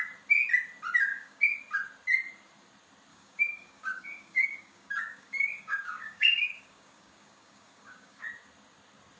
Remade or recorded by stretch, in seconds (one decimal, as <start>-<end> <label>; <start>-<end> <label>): 0.0-1.1 recorded; 1.1-1.6 remade; 1.6-3.1 recorded; 3.1-8.2 remade; 8.2-9.2 recorded